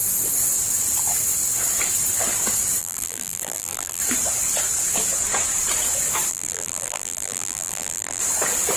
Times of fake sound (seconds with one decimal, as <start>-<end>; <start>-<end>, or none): 2.8-4.0; 6.3-8.2

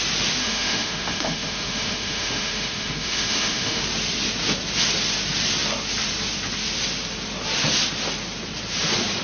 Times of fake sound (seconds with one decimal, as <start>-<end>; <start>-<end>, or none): 0.4-3.8